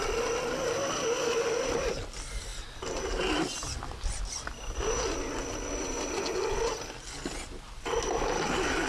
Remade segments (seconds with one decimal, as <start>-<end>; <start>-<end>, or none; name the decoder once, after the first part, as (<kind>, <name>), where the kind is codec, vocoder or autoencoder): none